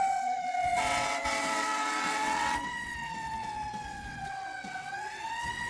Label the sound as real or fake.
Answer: fake